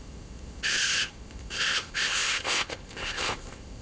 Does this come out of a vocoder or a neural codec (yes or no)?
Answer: yes